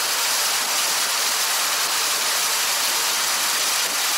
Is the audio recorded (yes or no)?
yes